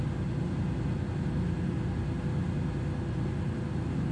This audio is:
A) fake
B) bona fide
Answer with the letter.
B